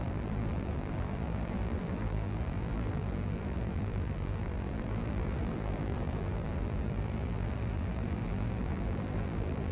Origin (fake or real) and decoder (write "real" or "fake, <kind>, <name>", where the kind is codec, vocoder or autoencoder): fake, vocoder, BigVGAN v2